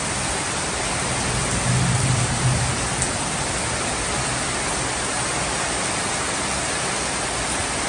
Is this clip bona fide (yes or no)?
yes